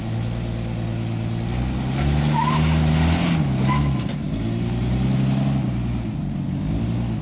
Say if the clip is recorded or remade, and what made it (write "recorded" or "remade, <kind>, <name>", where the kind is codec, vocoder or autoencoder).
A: recorded